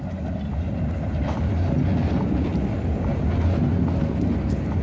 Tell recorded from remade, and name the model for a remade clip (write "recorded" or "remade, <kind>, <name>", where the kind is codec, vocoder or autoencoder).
recorded